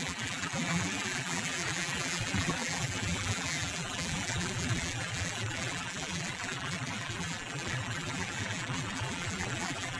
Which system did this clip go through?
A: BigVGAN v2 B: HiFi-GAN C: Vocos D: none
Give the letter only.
A